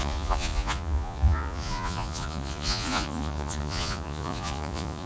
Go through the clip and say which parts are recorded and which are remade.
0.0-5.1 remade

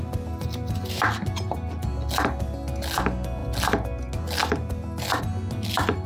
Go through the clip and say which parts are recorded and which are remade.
0.0-6.1 recorded

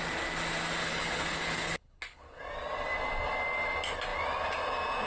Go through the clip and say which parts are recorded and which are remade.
0.0-0.8 recorded; 0.8-2.4 remade; 2.4-5.1 recorded

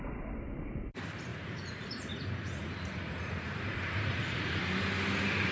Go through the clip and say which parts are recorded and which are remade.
0.0-1.3 recorded; 1.3-4.6 remade; 4.6-5.5 recorded

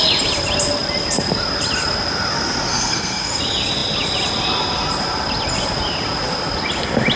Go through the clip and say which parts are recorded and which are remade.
0.0-2.7 recorded; 2.7-3.4 remade; 3.4-7.2 recorded